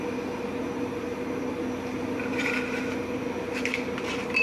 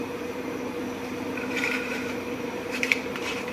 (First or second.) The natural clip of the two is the first